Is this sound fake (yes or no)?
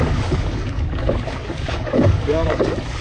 yes